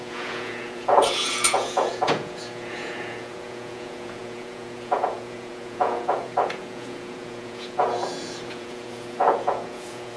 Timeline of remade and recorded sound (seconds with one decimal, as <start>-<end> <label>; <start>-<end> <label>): 0.0-10.2 remade